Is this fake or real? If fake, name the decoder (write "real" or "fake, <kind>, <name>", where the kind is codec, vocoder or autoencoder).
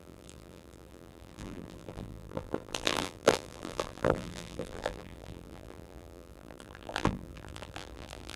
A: fake, vocoder, BigVGAN v2